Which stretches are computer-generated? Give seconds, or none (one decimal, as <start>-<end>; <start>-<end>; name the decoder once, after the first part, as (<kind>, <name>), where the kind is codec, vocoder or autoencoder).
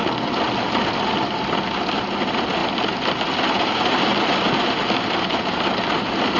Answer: none